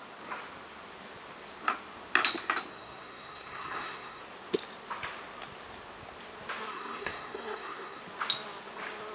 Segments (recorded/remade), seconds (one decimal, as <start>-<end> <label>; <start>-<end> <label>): 0.0-2.7 recorded; 2.7-4.2 remade; 4.2-6.7 recorded; 6.7-8.0 remade; 8.0-9.1 recorded